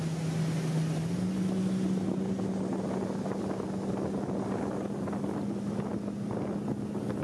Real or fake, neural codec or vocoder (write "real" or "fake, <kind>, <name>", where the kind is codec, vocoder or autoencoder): real